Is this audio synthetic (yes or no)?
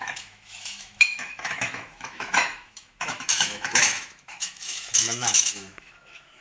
yes